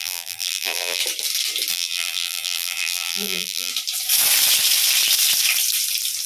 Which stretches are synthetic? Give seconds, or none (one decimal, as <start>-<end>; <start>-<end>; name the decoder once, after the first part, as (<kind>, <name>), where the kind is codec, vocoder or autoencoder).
0.0-1.0 (vocoder, BigVGAN v2); 1.7-3.7